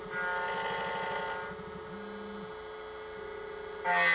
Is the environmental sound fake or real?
real